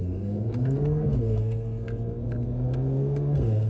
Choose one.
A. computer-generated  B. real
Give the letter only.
A